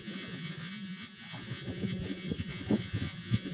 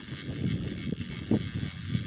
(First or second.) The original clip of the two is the second